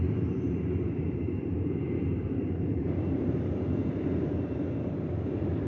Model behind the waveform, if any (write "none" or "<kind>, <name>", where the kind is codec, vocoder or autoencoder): vocoder, BigVGAN v2